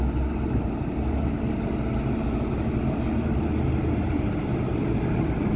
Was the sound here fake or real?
real